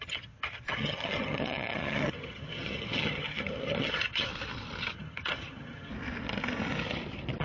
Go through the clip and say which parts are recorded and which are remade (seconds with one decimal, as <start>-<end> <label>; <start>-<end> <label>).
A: 0.0-4.3 remade; 4.3-4.9 recorded; 4.9-5.9 remade; 5.9-7.4 recorded